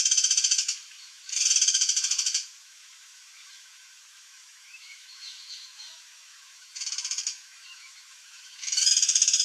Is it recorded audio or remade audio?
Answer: remade